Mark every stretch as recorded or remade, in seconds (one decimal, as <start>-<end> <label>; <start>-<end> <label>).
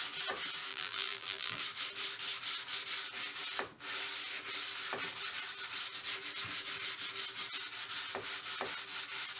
0.0-0.7 recorded; 0.7-1.6 remade; 1.6-9.4 recorded